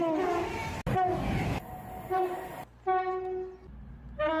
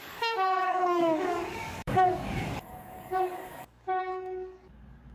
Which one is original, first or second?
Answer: first